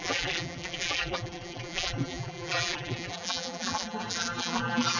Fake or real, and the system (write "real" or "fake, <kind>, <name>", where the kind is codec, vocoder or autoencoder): fake, vocoder, BigVGAN v2